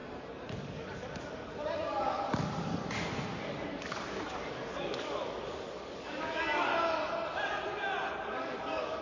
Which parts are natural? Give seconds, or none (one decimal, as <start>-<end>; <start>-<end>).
0.0-0.5; 2.8-3.4; 6.7-8.3